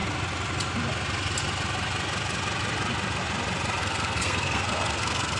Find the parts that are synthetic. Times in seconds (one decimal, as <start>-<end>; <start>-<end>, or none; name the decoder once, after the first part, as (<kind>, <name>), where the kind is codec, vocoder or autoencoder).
3.8-5.4 (codec, SNAC)